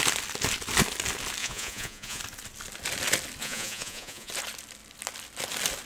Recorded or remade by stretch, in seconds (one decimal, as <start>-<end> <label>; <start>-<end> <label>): 0.0-1.4 recorded; 1.4-2.2 remade; 2.2-3.4 recorded; 3.4-4.3 remade; 4.3-5.9 recorded